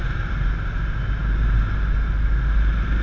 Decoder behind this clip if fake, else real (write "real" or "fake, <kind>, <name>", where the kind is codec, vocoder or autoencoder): real